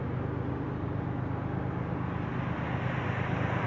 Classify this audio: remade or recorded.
recorded